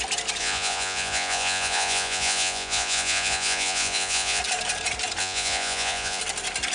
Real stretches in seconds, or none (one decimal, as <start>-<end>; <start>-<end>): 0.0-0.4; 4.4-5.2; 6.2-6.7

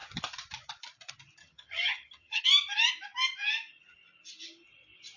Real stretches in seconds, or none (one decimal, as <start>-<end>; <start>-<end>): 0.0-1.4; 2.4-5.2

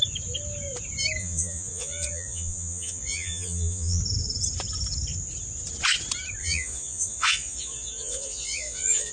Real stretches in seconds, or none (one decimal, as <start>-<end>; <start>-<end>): 0.0-1.2; 4.0-6.4

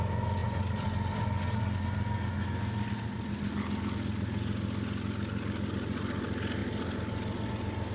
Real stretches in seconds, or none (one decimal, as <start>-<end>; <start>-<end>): 0.0-7.9